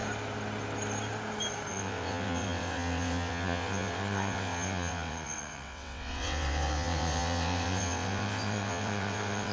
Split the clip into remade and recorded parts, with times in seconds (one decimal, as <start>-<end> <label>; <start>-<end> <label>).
0.0-1.7 recorded; 1.7-9.5 remade